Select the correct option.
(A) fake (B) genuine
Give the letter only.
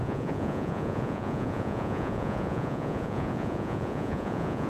A